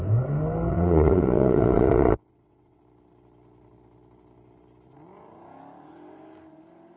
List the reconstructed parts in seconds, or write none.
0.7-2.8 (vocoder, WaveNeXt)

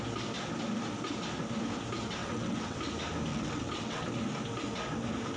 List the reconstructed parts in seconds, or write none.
2.2-2.8 (vocoder, WaveNeXt); 3.3-4.1

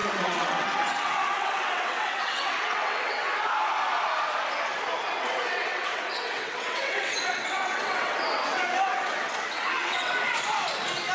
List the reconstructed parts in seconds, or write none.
0.0-3.3 (vocoder, WaveNeXt); 5.1-10.1

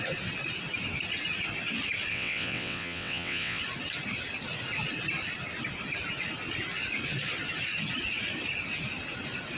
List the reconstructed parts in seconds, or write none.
2.1-3.6 (vocoder, WaveNeXt)

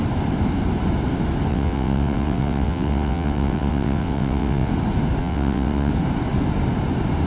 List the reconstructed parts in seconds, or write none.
1.5-4.7 (vocoder, WaveNeXt); 5.2-5.9

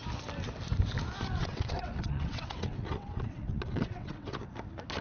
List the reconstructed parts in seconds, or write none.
1.4-4.4 (vocoder, WaveNeXt)

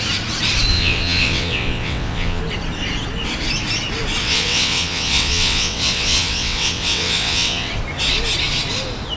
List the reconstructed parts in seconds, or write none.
0.7-2.4 (vocoder, WaveNeXt); 4.2-7.7

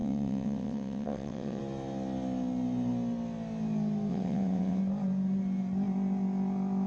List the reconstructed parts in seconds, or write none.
0.0-1.6 (vocoder, WaveNeXt); 4.1-4.8